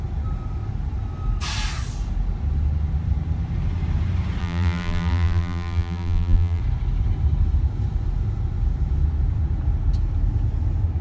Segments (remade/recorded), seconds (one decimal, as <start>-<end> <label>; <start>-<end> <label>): 0.0-4.4 recorded; 4.4-6.6 remade; 6.6-11.0 recorded